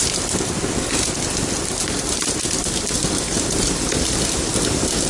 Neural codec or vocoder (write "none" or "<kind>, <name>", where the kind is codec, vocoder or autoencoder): none